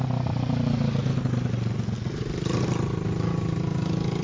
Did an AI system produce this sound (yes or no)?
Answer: no